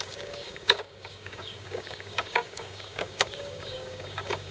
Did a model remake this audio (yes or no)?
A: yes